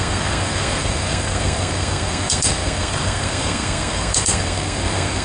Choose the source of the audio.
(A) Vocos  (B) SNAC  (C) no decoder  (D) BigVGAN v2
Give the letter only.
B